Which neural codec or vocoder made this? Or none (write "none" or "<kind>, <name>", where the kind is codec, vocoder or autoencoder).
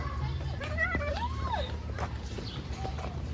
vocoder, BigVGAN v2